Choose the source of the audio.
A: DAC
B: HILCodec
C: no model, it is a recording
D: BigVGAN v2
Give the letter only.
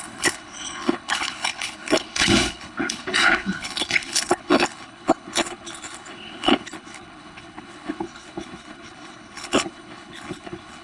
B